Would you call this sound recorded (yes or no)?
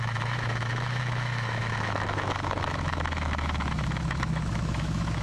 no